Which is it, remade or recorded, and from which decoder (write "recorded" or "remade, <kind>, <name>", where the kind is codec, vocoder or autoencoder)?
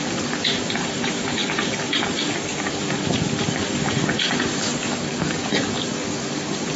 remade, codec, DAC